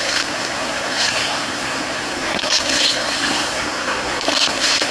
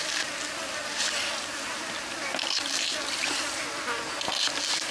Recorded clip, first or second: second